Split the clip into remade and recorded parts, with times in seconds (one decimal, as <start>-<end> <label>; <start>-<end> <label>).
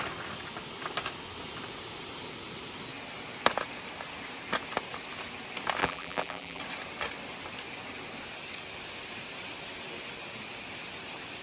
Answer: 0.0-5.8 recorded; 5.8-6.6 remade; 6.6-11.4 recorded